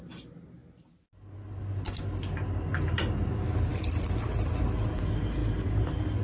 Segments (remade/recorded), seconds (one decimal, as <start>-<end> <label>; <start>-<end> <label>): 0.0-6.2 recorded